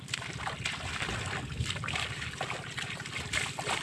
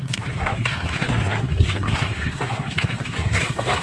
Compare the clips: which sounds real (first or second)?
first